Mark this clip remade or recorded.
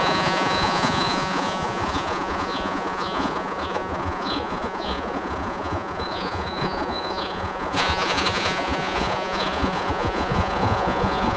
remade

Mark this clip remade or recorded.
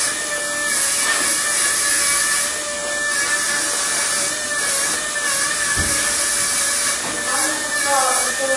recorded